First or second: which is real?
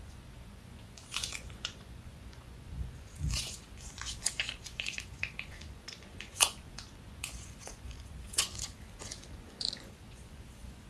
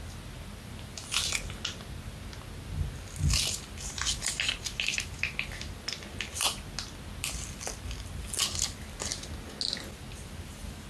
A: second